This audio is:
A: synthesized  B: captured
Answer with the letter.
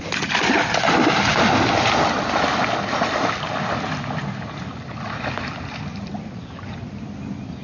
B